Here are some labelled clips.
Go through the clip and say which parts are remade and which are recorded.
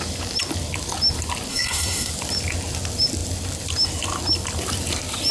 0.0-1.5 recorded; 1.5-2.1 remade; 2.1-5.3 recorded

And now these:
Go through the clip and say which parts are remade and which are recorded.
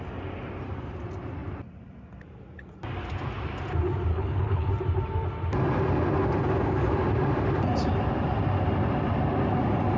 0.0-4.1 recorded; 4.1-4.7 remade; 4.7-10.0 recorded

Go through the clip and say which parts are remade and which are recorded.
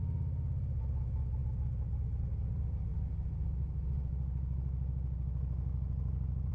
0.0-6.5 recorded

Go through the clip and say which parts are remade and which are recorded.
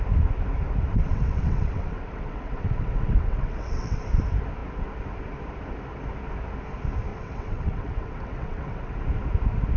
0.0-0.9 recorded; 0.9-4.1 remade; 4.1-7.1 recorded; 7.1-9.0 remade; 9.0-9.8 recorded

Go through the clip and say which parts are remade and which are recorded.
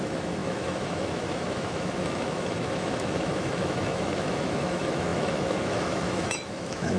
0.0-7.0 remade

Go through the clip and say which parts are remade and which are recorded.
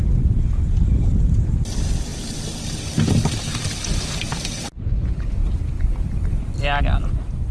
0.0-7.5 recorded